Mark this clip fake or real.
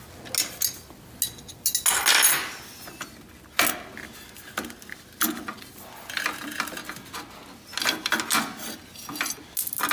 real